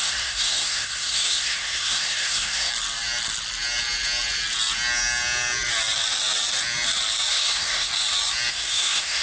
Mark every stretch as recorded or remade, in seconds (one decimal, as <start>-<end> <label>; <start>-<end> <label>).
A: 0.0-2.7 remade; 2.7-7.3 recorded; 7.3-7.9 remade; 7.9-8.5 recorded; 8.5-9.2 remade